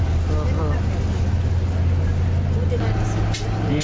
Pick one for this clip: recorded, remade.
recorded